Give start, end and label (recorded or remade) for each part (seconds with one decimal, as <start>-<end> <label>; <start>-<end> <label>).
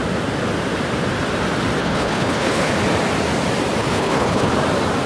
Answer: 0.0-1.8 recorded; 1.8-2.7 remade; 2.7-3.8 recorded; 3.8-4.5 remade; 4.5-5.1 recorded